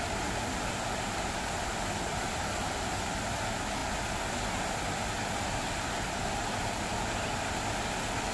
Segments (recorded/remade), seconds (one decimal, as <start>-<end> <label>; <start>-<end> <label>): 0.0-8.3 recorded